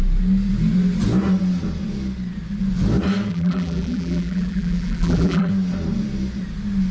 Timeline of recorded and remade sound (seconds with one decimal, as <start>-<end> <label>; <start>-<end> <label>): 0.0-3.3 recorded; 3.3-5.5 remade; 5.5-6.9 recorded